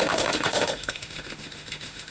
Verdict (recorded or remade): remade